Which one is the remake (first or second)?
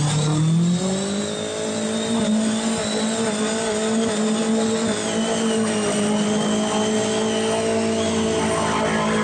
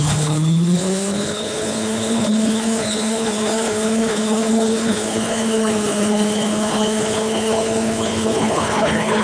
second